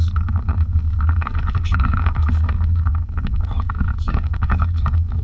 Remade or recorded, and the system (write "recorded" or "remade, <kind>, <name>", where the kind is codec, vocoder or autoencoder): remade, codec, SNAC